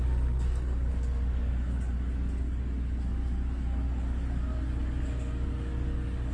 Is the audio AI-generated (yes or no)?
yes